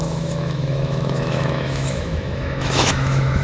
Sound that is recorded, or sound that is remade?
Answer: remade